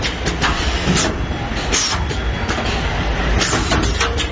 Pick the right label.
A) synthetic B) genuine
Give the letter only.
B